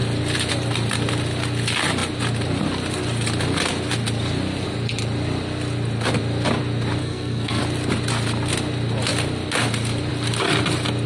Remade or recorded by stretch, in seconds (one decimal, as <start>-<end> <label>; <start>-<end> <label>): 0.0-7.0 recorded; 7.0-7.6 remade; 7.6-11.1 recorded